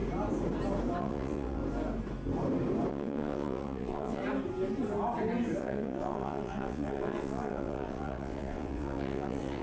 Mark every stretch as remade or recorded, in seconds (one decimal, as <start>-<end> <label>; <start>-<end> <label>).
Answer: 0.0-1.0 recorded; 1.0-1.6 remade; 1.6-2.9 recorded; 2.9-4.2 remade; 4.2-5.6 recorded; 5.6-9.6 remade